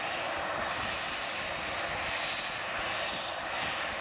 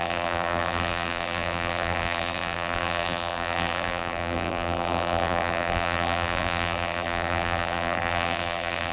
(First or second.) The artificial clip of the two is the second